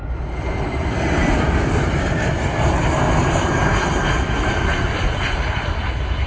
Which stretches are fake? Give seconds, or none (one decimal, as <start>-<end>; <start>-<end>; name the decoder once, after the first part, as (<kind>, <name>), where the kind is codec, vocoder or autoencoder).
none